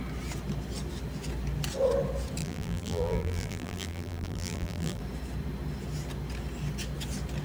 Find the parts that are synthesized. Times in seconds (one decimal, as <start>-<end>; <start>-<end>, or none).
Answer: 2.4-5.0